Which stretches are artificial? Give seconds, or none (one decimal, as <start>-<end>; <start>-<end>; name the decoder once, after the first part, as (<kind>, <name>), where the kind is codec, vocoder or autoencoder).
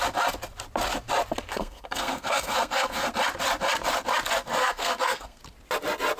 1.5-3.1 (codec, SNAC); 4.6-5.4